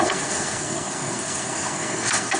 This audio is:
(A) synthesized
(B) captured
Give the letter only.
A